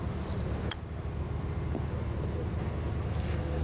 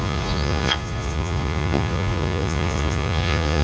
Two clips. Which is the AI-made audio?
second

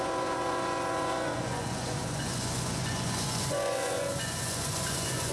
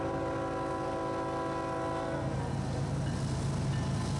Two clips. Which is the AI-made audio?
first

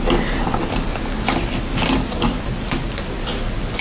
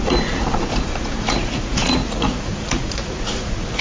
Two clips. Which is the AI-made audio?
second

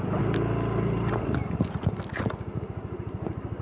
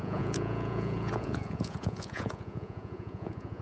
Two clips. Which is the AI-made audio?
second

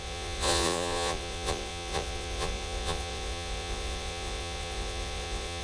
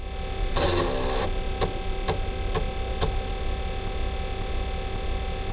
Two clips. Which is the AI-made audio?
first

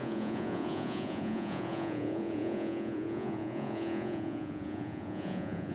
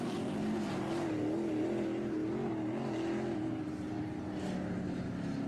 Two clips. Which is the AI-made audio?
first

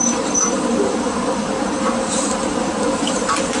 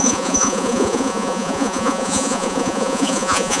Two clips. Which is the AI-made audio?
second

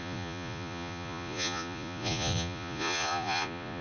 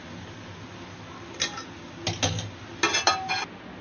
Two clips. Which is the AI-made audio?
first